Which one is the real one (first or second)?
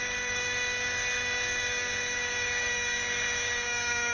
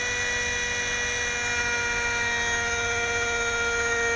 second